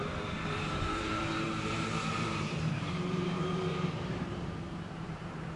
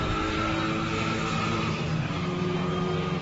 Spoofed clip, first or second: first